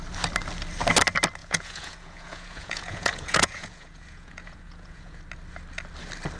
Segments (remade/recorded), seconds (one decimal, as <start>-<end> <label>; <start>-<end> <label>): 0.0-1.4 recorded; 1.4-5.2 remade; 5.2-6.4 recorded